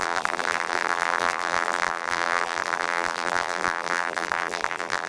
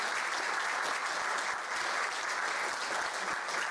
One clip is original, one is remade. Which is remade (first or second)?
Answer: first